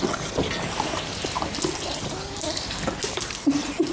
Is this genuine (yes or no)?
yes